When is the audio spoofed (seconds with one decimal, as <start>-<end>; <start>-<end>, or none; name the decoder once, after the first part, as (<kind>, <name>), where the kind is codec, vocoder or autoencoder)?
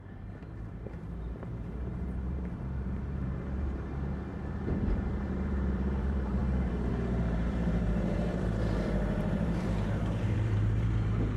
0.0-3.9 (vocoder, BigVGAN v2); 4.4-11.4